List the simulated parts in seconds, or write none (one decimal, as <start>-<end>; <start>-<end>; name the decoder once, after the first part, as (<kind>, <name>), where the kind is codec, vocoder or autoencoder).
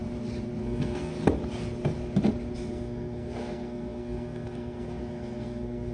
0.6-1.1 (codec, SNAC); 2.7-5.9